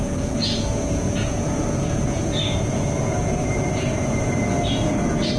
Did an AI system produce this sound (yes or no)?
yes